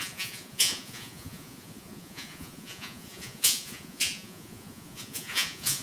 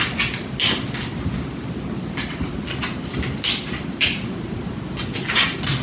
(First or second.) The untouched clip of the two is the second